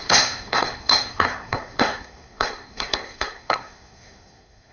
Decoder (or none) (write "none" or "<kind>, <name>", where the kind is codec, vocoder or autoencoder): codec, SNAC